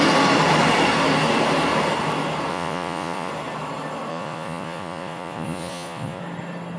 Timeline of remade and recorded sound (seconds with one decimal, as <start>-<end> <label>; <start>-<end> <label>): 0.0-2.5 recorded; 2.5-3.3 remade; 3.3-4.1 recorded; 4.1-6.2 remade; 6.2-6.8 recorded